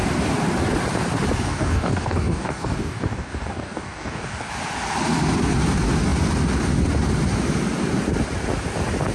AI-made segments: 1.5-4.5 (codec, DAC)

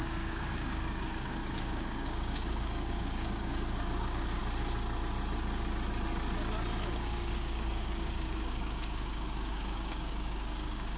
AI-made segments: 0.0-4.4 (codec, DAC); 6.8-11.0

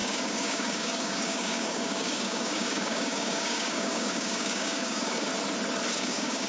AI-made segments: 0.0-5.3 (codec, DAC); 6.0-6.5

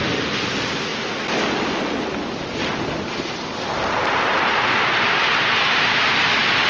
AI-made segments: none

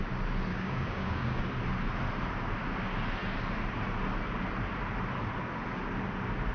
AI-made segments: 0.5-1.4 (codec, DAC)

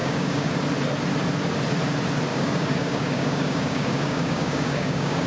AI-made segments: 0.0-0.5 (codec, DAC); 2.3-5.3

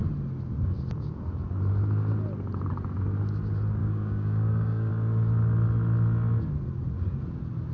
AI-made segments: 3.8-4.9 (codec, DAC)